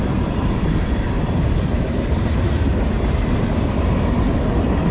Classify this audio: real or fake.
fake